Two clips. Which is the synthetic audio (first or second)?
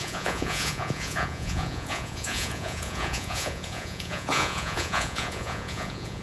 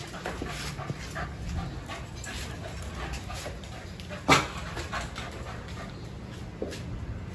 first